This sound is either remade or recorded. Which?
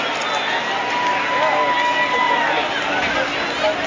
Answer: recorded